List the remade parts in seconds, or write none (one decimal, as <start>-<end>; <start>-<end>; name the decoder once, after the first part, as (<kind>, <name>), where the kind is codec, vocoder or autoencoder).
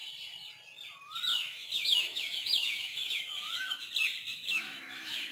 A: 1.3-3.9 (autoencoder, DAC-VAE); 4.3-5.3